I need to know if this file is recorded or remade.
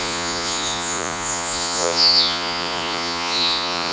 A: remade